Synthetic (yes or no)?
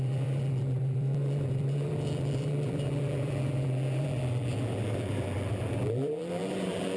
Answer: yes